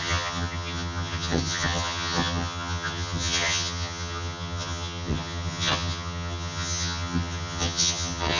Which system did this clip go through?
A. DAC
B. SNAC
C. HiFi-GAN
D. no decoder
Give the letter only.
C